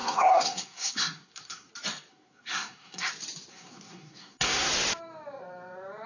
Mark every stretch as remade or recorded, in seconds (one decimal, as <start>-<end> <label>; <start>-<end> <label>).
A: 0.0-1.7 remade; 1.7-2.1 recorded; 2.1-3.1 remade; 3.1-3.5 recorded; 3.5-4.7 remade; 4.7-6.1 recorded